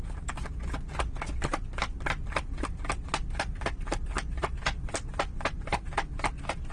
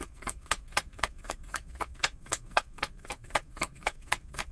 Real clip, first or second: first